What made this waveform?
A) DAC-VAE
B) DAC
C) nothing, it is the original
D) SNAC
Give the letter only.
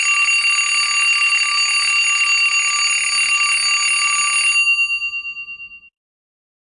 C